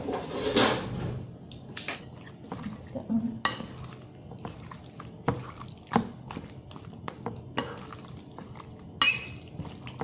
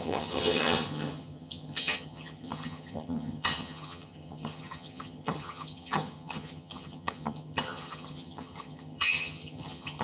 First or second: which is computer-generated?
second